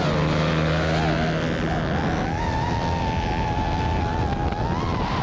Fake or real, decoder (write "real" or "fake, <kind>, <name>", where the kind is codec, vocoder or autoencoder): real